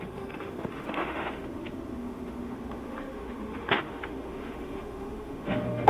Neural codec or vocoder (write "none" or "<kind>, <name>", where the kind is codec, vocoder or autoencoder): autoencoder, DAC-VAE